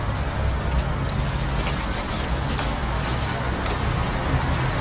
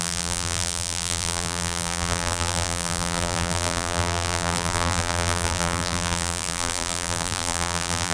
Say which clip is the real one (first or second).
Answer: first